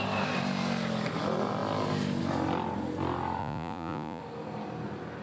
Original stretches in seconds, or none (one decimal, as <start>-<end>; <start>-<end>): 0.0-3.4; 4.2-5.2